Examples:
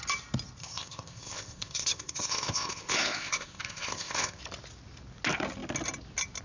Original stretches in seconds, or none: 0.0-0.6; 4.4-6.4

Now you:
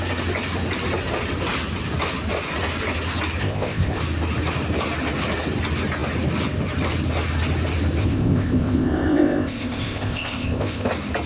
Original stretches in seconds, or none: 0.0-3.4; 4.0-8.0; 10.9-11.3